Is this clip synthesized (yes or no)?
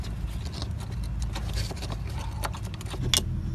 no